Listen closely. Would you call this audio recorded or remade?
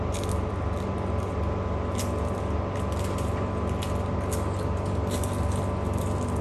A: recorded